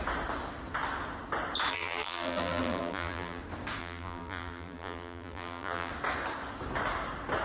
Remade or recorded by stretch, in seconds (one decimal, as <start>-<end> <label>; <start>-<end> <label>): 0.0-1.7 recorded; 1.7-3.4 remade; 3.4-3.8 recorded; 3.8-5.9 remade; 5.9-7.4 recorded